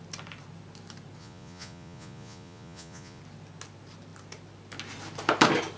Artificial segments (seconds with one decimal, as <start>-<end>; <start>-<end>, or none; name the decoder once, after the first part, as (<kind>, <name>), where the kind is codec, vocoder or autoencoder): 1.2-3.2 (vocoder, Vocos)